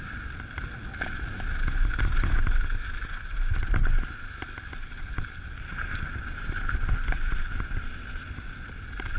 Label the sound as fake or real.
real